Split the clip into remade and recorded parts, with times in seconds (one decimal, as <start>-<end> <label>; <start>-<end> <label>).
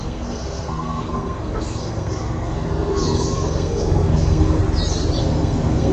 0.0-4.6 remade; 4.6-5.2 recorded; 5.2-5.9 remade